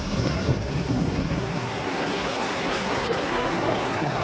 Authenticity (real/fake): fake